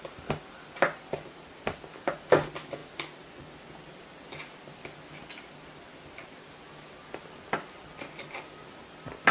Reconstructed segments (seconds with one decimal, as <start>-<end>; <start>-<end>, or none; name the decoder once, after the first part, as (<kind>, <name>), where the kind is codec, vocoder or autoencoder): none

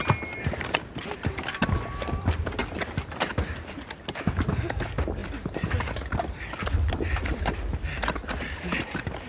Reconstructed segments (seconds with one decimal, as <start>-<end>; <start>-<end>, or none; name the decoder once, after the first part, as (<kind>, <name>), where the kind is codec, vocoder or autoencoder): none

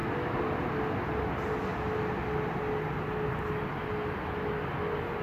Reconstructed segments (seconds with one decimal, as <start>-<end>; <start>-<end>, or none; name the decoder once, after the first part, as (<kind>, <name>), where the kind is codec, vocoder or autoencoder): none

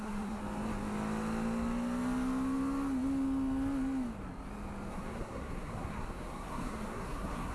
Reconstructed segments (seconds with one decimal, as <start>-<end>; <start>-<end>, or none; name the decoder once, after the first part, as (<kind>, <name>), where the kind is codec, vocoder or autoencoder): 0.0-0.4 (codec, SNAC); 4.9-7.5

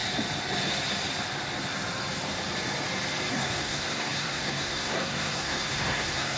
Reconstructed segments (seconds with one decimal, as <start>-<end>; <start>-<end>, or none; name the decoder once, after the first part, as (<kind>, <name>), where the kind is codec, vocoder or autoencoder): 3.3-6.4 (codec, SNAC)